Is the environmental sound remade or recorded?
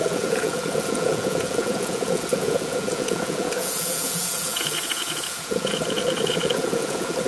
remade